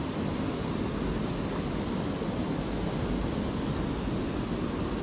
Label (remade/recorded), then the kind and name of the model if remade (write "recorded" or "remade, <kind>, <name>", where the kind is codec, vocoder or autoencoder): recorded